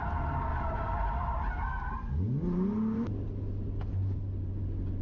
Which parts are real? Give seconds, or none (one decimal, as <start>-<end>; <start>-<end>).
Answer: 0.0-5.0